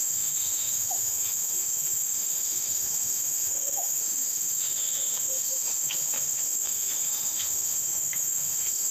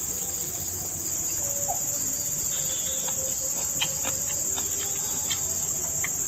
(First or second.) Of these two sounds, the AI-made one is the first